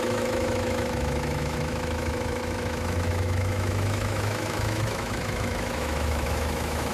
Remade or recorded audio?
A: remade